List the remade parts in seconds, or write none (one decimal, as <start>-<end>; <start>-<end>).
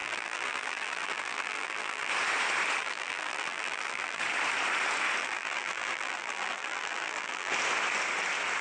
0.0-2.1; 2.8-4.2; 5.2-7.5